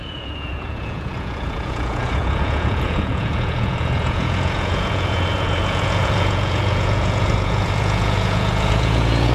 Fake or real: fake